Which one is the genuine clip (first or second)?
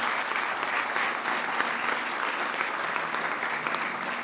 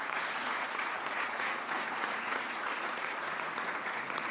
first